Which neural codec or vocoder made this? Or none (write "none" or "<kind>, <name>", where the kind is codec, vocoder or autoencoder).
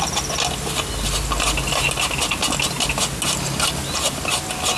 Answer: none